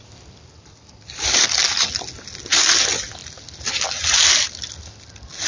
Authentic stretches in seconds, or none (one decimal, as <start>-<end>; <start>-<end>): 0.0-5.5